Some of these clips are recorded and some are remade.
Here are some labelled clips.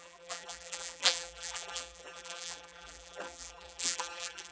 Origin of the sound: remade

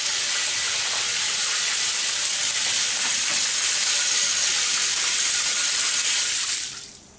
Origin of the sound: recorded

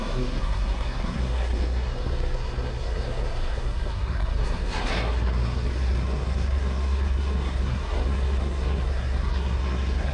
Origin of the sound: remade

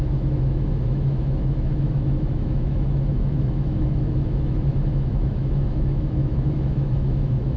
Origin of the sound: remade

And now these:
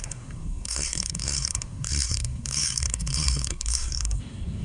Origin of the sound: remade